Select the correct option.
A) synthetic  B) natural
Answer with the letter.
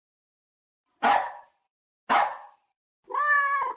B